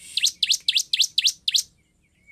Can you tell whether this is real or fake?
real